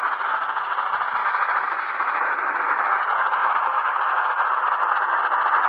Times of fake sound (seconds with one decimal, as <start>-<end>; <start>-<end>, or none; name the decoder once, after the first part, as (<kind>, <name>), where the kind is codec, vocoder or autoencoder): 1.2-3.0 (autoencoder, DAC-VAE); 3.4-4.6